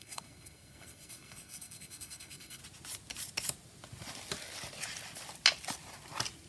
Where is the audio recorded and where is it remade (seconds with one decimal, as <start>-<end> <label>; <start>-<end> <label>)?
0.0-2.6 remade; 2.6-6.5 recorded